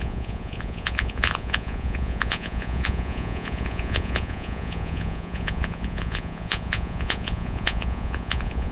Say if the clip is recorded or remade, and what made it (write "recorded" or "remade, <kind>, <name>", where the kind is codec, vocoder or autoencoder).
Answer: remade, vocoder, Vocos